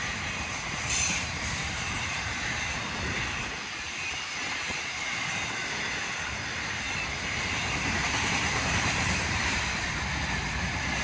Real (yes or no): no